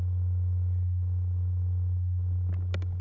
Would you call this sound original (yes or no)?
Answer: yes